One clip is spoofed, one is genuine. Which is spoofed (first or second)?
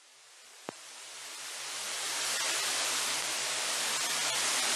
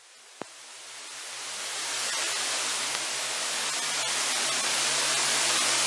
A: first